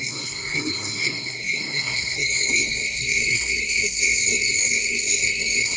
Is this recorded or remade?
remade